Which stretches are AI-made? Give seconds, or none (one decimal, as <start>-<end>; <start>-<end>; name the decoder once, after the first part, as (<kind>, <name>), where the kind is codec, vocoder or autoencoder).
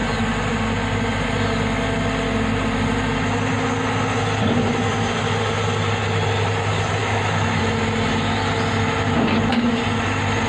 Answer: 7.0-7.6 (autoencoder, DAC-VAE)